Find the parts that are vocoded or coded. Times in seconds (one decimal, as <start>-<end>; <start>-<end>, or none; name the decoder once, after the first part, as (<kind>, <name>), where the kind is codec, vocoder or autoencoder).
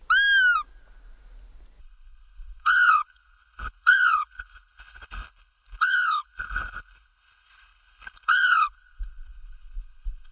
1.8-10.3 (codec, HILCodec)